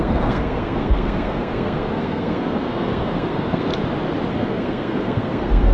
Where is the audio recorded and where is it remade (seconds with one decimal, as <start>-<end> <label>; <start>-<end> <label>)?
0.0-3.7 remade; 3.7-4.3 recorded; 4.3-5.7 remade